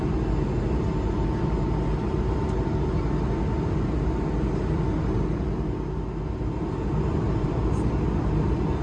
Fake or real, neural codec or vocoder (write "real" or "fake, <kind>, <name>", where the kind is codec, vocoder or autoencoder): real